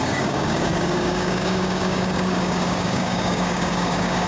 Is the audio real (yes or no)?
no